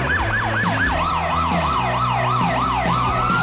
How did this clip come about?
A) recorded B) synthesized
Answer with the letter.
A